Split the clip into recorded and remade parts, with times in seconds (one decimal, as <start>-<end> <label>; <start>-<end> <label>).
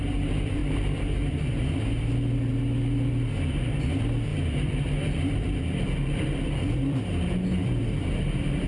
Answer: 0.0-0.6 recorded; 0.6-1.5 remade; 1.5-4.3 recorded; 4.3-7.0 remade; 7.0-7.6 recorded; 7.6-8.7 remade